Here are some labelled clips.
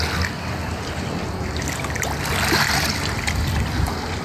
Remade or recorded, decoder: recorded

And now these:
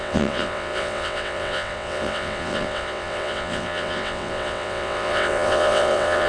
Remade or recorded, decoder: remade, vocoder, WaveNeXt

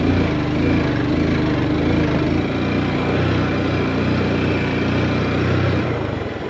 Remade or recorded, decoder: recorded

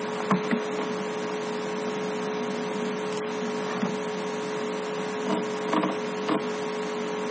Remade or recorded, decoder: recorded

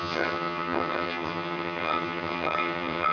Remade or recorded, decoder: remade, vocoder, HiFi-GAN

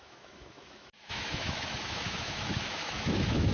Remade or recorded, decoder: remade, autoencoder, DAC-VAE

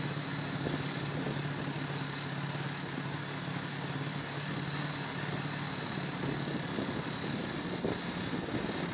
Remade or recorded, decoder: recorded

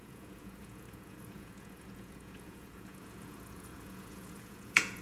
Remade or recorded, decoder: remade, vocoder, Vocos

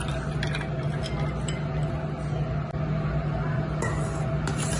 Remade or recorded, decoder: recorded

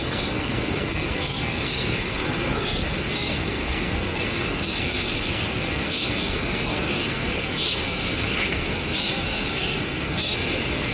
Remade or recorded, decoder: remade, codec, SNAC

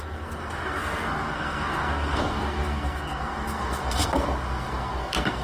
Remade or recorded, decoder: remade, codec, SNAC